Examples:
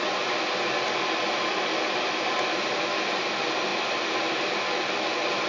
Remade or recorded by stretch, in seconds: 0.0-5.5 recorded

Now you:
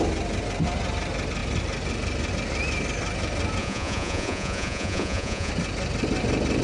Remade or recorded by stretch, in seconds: 0.0-3.6 recorded; 3.6-5.5 remade; 5.5-6.6 recorded

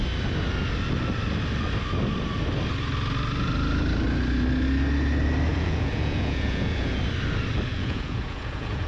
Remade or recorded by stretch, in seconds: 0.0-5.5 recorded; 5.5-7.0 remade; 7.0-7.7 recorded; 7.7-8.9 remade

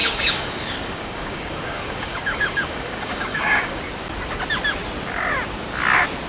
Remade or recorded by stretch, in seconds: 0.0-3.8 remade; 3.8-6.3 recorded